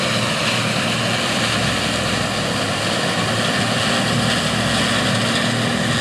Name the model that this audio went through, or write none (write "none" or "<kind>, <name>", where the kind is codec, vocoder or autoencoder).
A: none